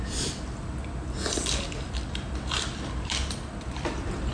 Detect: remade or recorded remade